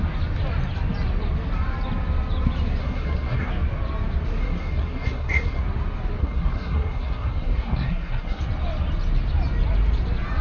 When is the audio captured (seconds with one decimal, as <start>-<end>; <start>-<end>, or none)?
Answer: 0.0-2.8; 3.5-4.4; 5.6-6.2; 8.4-10.4